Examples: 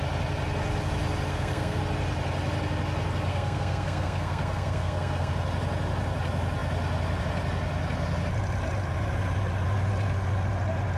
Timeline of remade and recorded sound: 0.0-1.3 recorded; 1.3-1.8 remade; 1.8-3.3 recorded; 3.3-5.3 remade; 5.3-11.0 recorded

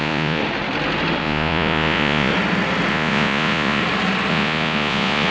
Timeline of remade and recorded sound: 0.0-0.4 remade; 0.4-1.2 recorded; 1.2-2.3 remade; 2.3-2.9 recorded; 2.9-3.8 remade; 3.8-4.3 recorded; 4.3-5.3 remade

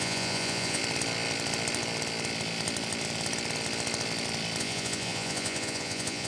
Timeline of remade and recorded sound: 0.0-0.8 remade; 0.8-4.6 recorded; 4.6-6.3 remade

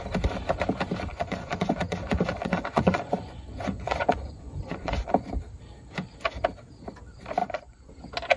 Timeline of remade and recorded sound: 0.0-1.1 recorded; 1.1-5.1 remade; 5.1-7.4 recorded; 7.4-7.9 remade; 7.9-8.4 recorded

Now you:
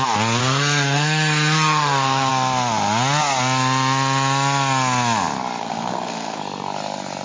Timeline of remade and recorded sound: 0.0-0.4 recorded; 0.4-2.3 remade; 2.3-5.6 recorded; 5.6-6.4 remade; 6.4-7.2 recorded